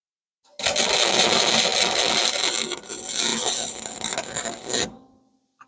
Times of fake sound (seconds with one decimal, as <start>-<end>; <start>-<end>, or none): none